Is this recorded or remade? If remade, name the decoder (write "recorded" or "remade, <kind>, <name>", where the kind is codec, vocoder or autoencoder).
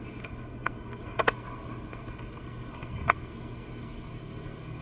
remade, codec, SNAC